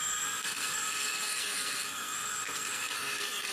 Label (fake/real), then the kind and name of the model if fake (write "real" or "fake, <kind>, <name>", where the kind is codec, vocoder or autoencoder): fake, codec, SNAC